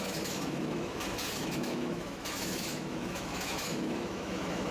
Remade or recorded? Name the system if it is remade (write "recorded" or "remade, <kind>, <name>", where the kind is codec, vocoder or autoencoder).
remade, autoencoder, DAC-VAE